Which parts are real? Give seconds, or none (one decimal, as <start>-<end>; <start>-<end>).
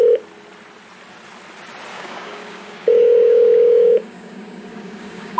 0.0-1.9